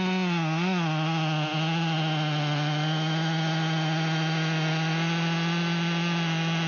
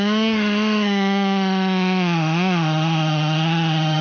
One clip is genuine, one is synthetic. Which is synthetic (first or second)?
second